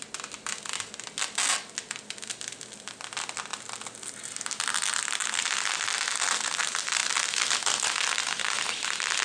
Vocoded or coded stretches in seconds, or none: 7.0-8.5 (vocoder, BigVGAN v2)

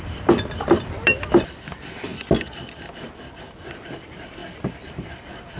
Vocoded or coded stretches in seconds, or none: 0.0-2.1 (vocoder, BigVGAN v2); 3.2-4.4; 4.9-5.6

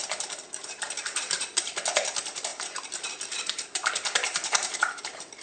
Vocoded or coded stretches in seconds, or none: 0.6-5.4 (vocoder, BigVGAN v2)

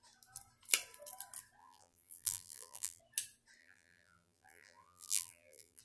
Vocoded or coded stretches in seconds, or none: 1.6-3.0 (vocoder, BigVGAN v2); 3.6-5.8